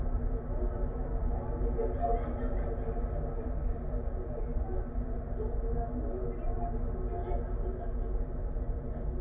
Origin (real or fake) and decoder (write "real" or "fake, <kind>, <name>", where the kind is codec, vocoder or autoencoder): real